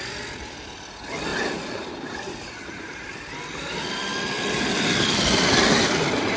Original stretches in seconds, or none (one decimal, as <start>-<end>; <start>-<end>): 0.0-6.4